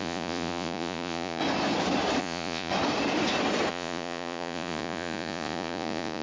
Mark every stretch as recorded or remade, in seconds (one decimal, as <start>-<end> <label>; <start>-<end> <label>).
0.0-1.4 remade; 1.4-2.2 recorded; 2.2-2.7 remade; 2.7-3.7 recorded; 3.7-6.2 remade